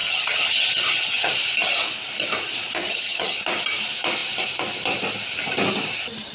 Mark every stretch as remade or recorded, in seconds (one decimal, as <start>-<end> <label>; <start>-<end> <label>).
0.0-1.3 remade; 1.3-2.8 recorded; 2.8-3.4 remade; 3.4-6.3 recorded